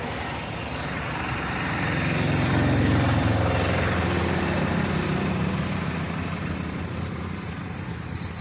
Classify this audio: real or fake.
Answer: fake